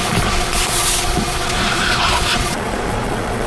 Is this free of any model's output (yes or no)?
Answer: no